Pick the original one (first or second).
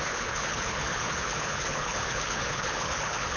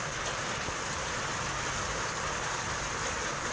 second